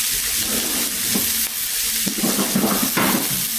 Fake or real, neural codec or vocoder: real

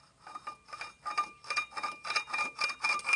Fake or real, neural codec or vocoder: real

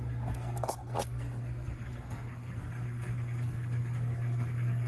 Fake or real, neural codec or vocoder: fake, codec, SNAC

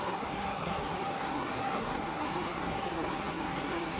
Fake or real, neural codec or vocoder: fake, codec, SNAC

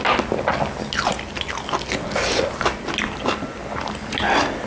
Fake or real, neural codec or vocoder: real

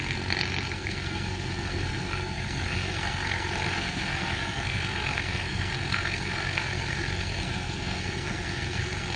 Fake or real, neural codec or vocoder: fake, codec, SNAC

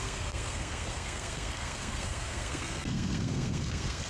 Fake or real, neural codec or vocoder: fake, codec, SNAC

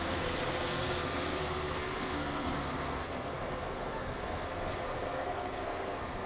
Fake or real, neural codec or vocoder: fake, codec, SNAC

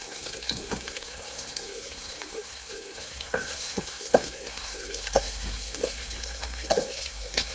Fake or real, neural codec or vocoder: fake, codec, SNAC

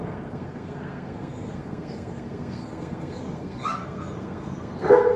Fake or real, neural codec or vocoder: fake, codec, SNAC